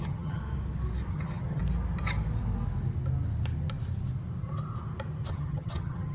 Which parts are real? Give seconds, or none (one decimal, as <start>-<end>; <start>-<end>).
0.4-1.1; 1.6-5.3